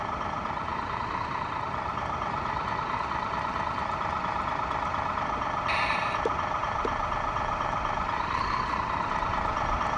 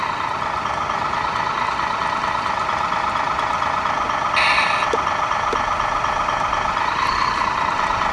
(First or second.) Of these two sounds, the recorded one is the second